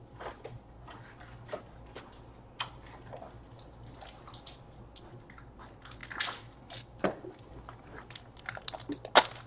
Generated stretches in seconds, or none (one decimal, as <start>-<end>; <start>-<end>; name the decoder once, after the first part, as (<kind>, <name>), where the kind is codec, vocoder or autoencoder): none